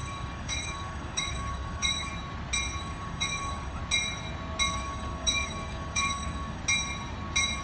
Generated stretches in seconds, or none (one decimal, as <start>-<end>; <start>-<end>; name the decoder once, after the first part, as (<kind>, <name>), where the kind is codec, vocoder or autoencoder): 0.0-2.1 (codec, DAC); 2.8-3.8; 4.7-6.6